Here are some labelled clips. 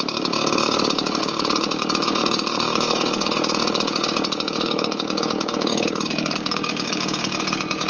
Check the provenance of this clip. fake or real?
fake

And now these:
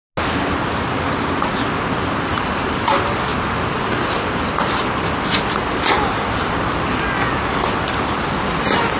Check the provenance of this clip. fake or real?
real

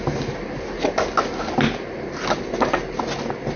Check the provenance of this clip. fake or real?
real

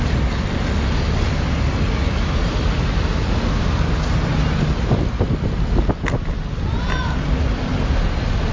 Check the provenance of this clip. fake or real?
real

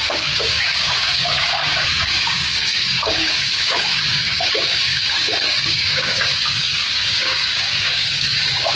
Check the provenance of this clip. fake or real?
fake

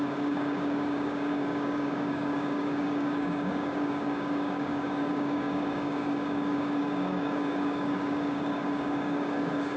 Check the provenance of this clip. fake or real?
fake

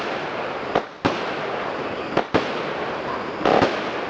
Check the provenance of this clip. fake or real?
real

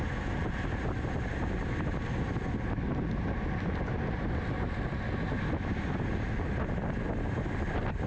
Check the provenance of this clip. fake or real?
real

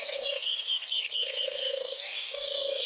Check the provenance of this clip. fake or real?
fake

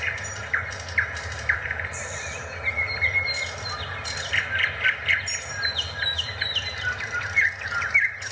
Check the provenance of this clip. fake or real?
real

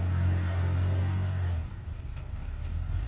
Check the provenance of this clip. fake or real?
fake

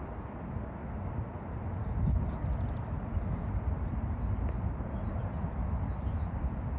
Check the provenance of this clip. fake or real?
real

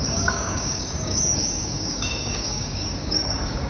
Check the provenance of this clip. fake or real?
fake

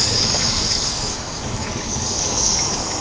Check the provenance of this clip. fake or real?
fake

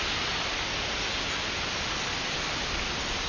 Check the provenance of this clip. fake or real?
real